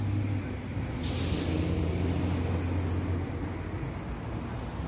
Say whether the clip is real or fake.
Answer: real